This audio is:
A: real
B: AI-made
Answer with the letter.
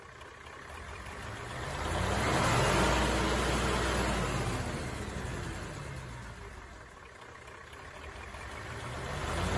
A